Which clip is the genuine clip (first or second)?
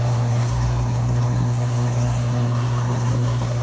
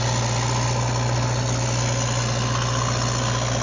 second